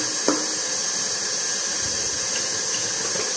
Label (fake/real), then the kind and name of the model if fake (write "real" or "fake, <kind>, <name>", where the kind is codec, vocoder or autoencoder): fake, vocoder, BigVGAN v2